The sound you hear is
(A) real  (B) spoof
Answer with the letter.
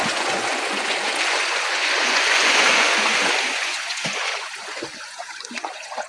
B